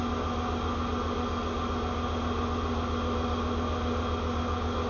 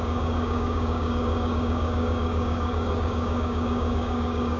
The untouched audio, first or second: first